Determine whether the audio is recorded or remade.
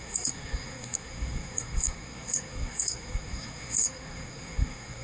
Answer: remade